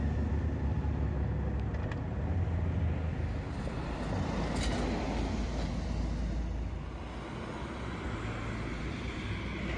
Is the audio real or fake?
real